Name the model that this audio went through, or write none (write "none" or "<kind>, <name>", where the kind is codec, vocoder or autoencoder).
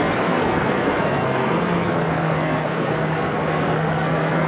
codec, SNAC